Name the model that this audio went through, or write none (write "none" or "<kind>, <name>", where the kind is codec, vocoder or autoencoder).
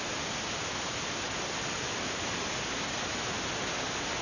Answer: none